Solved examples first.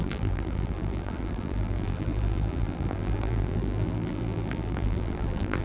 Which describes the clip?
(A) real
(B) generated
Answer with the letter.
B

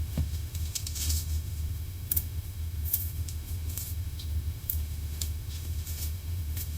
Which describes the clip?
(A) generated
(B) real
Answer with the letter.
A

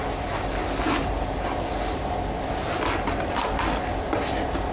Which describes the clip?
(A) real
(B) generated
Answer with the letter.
A